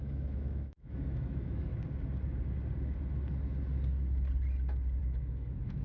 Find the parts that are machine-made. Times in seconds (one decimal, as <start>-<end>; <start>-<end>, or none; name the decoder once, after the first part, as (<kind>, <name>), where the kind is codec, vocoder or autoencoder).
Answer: 0.0-1.7 (autoencoder, DAC-VAE); 5.0-5.8